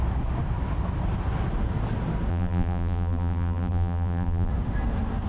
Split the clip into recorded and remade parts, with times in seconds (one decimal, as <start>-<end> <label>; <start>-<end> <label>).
0.0-2.3 recorded; 2.3-4.5 remade; 4.5-5.3 recorded